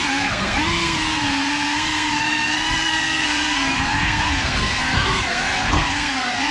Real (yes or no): no